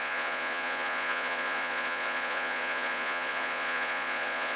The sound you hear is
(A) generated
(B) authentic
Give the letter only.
A